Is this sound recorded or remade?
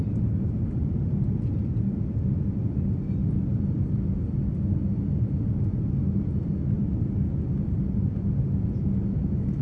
recorded